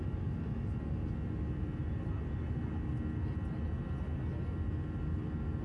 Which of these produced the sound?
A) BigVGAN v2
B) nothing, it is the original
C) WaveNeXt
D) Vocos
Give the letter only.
B